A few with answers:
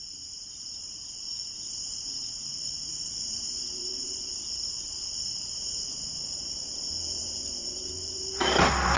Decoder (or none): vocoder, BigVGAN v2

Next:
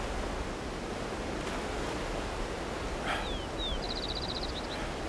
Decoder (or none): none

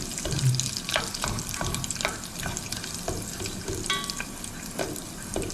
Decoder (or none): none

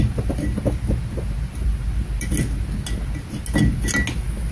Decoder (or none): none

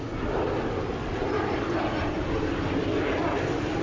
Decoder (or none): none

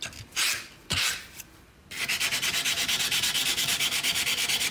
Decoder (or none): vocoder, BigVGAN v2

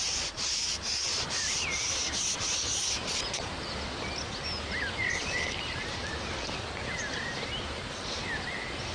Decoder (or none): none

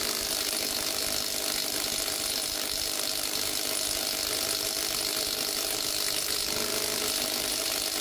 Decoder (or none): none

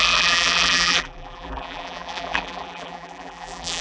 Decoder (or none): vocoder, BigVGAN v2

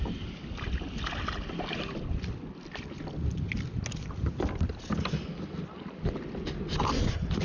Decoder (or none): none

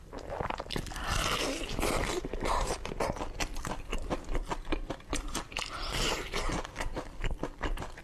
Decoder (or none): vocoder, BigVGAN v2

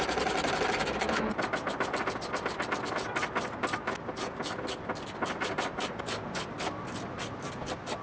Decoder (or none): vocoder, BigVGAN v2